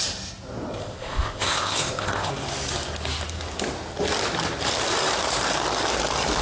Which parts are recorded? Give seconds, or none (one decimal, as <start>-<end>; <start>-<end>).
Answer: 0.0-0.8; 2.3-6.4

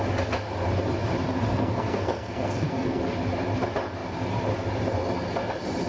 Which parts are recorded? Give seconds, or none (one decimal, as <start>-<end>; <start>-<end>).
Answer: 0.0-1.5; 3.0-5.9

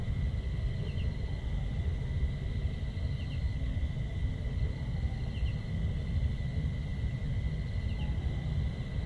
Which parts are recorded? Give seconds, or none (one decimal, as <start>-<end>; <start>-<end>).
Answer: 0.0-9.1